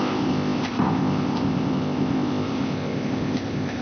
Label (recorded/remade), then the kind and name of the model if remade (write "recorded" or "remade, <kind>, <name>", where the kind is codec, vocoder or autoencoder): remade, codec, ZipCodec